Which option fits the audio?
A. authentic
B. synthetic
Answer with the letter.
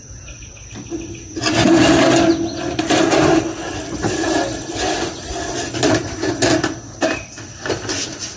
A